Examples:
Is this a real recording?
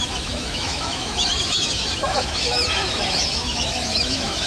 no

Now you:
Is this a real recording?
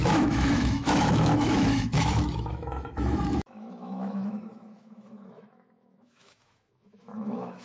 no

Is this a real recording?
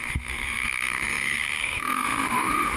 no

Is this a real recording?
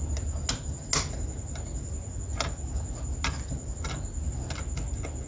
yes